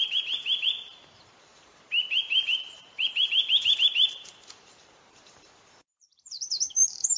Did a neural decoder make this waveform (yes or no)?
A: yes